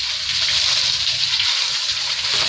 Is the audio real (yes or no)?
yes